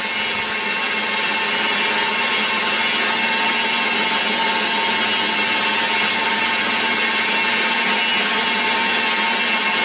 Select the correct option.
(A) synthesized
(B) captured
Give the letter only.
B